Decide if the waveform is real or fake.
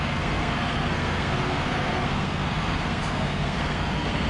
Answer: fake